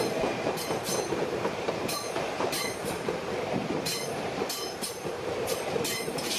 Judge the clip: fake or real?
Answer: fake